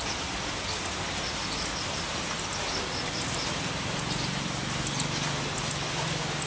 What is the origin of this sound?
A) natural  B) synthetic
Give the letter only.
A